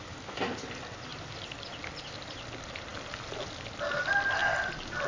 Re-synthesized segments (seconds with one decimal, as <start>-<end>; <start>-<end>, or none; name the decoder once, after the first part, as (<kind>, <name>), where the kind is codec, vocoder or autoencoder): 4.4-5.1 (vocoder, BigVGAN v2)